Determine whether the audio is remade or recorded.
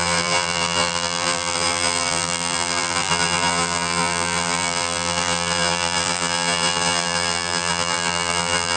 remade